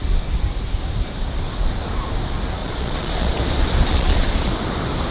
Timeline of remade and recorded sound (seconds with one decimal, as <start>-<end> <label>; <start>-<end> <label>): 0.0-2.6 recorded; 2.6-3.4 remade; 3.4-3.9 recorded; 3.9-4.5 remade; 4.5-5.1 recorded

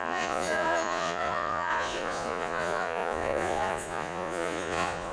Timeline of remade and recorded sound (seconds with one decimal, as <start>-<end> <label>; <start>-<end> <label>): 0.0-5.1 remade

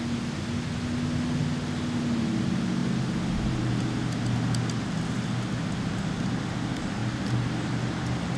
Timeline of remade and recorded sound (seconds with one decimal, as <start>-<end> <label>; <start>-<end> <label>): 0.0-8.4 recorded

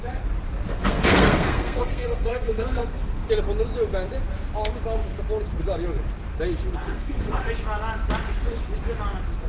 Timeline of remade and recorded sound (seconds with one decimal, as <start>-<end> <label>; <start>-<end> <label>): 0.0-0.8 recorded; 0.8-3.3 remade; 3.3-6.8 recorded; 6.8-7.5 remade; 7.5-9.5 recorded

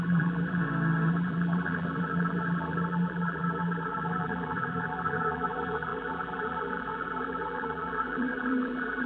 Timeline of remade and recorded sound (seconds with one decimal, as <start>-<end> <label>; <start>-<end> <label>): 0.0-0.6 remade; 0.6-1.1 recorded; 1.1-9.1 remade

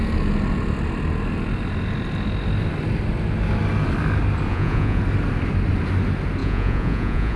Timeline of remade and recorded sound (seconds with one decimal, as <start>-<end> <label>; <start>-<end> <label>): 0.0-4.5 recorded; 4.5-5.0 remade; 5.0-6.4 recorded; 6.4-7.4 remade

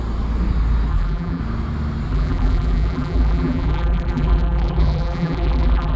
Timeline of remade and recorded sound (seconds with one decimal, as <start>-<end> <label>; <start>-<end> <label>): 0.0-0.9 recorded; 0.9-1.4 remade; 1.4-2.1 recorded; 2.1-6.0 remade

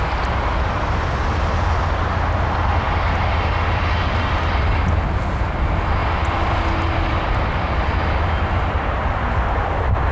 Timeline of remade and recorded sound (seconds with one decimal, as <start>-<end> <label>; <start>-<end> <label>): 0.0-10.1 recorded